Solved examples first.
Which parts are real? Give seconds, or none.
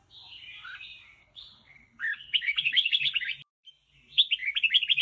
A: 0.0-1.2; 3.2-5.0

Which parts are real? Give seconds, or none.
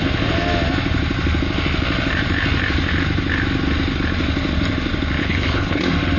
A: 0.0-5.2; 5.8-6.2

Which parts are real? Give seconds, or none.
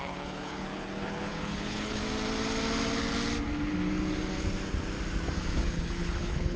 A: 2.0-5.4